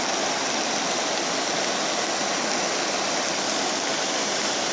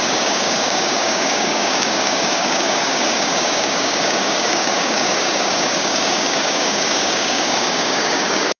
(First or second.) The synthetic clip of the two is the second